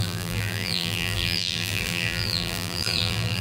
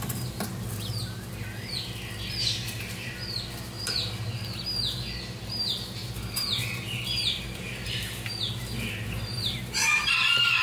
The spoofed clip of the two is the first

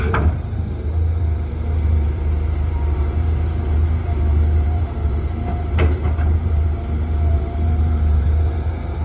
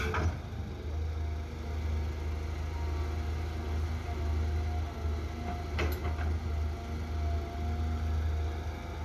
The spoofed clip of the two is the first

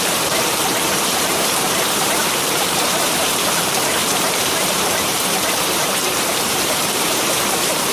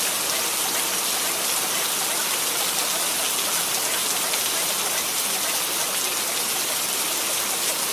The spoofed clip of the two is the first